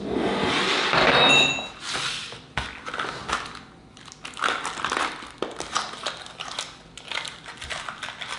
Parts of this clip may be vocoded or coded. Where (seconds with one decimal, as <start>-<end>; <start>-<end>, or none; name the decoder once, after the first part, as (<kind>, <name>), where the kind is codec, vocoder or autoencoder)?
none